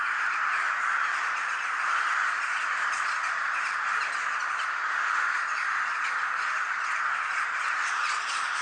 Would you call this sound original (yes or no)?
yes